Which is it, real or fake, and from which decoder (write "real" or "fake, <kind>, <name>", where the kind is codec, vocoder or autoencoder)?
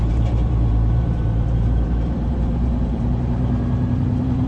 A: fake, vocoder, BigVGAN v2